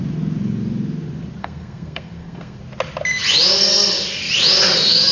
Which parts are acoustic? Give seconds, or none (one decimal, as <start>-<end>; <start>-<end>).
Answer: 0.0-1.4; 2.6-5.1